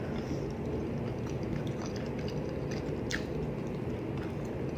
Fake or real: real